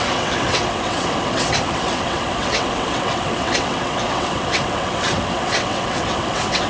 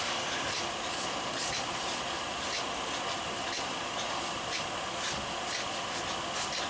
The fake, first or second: first